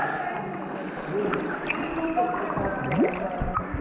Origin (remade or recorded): recorded